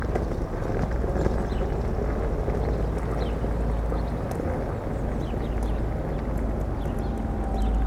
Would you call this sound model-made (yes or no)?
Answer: no